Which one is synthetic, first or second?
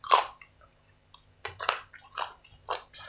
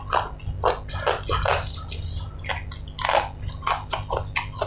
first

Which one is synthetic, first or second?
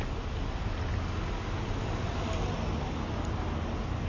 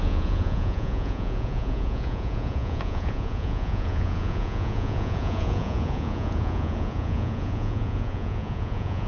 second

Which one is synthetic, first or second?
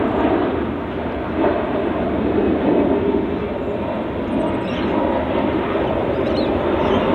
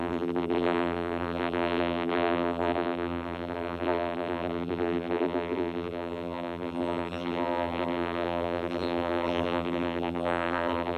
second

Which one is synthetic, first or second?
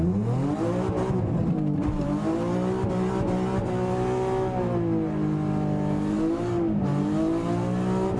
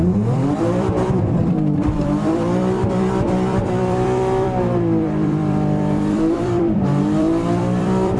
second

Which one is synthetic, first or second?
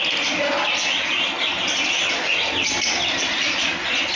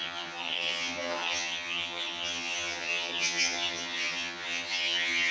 second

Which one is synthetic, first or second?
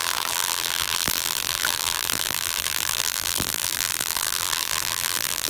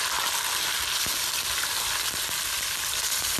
first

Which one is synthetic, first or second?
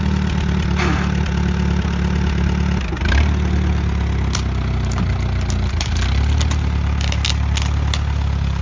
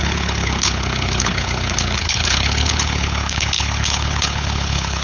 second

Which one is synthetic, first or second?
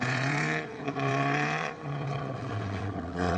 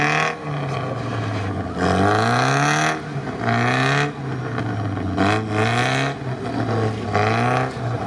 first